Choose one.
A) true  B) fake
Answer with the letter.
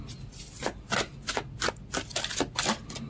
A